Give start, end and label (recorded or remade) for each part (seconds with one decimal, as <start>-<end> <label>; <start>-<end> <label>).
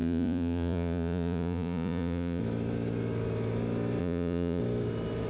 0.0-2.4 remade; 2.4-4.0 recorded; 4.0-4.6 remade; 4.6-5.3 recorded